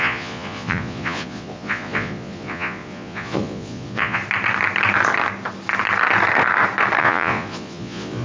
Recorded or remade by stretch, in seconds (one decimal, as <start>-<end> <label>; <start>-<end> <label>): 0.0-4.2 remade; 4.2-7.0 recorded; 7.0-8.2 remade